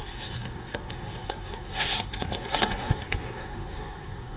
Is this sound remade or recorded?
remade